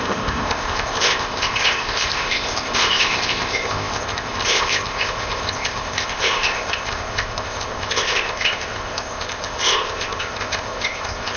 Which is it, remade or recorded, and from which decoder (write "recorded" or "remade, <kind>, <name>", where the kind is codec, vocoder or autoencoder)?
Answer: remade, codec, ZipCodec